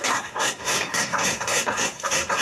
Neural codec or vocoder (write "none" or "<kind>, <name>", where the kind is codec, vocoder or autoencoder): codec, SNAC